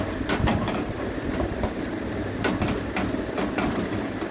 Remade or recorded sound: recorded